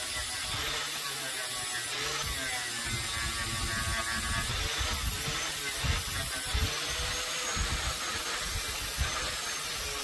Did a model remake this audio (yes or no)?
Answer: no